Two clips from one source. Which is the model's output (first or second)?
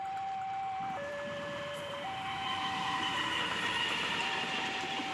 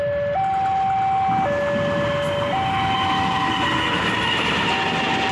first